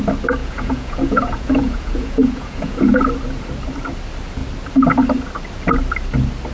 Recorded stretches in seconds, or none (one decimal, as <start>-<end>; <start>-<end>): 0.0-0.4; 3.0-6.5